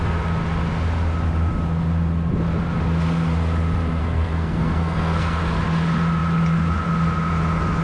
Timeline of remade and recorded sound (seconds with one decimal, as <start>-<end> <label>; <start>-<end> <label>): 0.0-4.0 recorded; 4.0-5.4 remade; 5.4-7.8 recorded